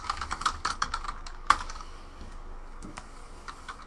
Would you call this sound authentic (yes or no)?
no